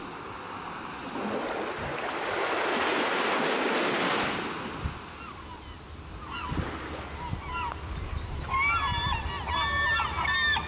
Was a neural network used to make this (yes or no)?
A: no